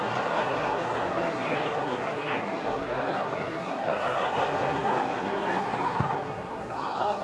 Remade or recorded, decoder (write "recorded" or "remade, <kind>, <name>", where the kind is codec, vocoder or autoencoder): remade, codec, SNAC